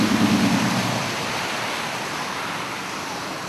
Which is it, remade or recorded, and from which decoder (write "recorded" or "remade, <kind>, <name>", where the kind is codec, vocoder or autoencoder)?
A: remade, vocoder, BigVGAN v2